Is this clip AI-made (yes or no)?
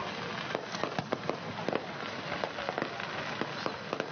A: no